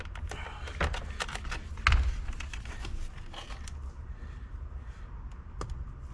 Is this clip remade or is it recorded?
recorded